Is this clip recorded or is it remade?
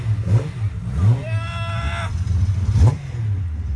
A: recorded